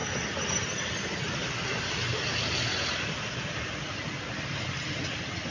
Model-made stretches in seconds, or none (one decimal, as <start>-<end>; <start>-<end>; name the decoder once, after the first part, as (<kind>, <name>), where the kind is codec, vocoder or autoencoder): none